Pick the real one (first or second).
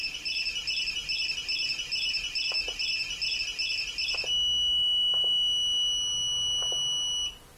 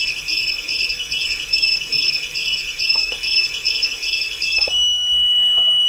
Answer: first